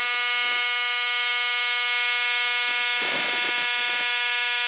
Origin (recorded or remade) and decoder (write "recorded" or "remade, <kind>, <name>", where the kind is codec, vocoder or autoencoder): remade, autoencoder, DAC-VAE